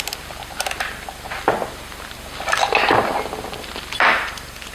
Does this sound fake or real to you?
real